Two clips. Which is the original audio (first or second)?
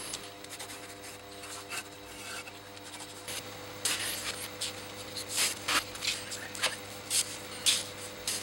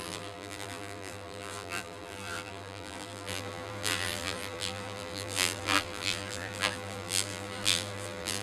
first